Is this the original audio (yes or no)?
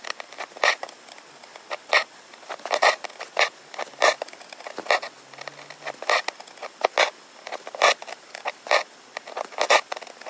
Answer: yes